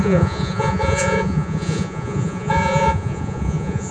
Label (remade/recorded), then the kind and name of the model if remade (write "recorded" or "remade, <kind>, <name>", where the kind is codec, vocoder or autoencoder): remade, vocoder, Vocos